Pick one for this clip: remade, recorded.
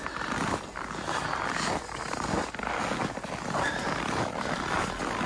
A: recorded